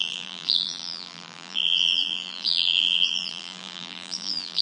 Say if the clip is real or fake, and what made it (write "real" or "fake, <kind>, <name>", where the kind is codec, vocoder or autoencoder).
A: fake, vocoder, BigVGAN v2